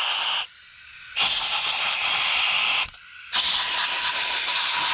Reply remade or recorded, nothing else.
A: recorded